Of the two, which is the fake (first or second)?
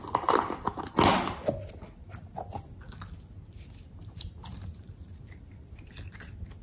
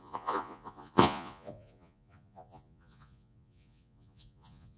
second